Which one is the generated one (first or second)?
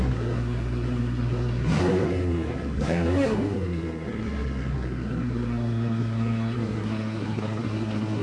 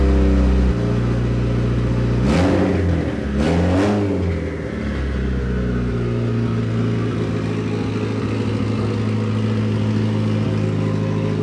first